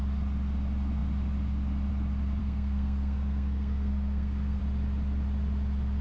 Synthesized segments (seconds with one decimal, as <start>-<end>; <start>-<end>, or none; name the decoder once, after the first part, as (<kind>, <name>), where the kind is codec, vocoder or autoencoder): 2.4-4.6 (codec, SNAC)